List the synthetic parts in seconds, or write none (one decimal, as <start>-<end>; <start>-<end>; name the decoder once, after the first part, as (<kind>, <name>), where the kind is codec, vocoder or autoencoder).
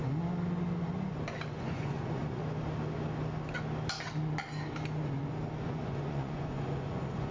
1.5-2.4 (vocoder, Vocos); 5.6-7.3